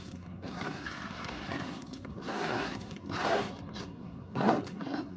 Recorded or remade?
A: remade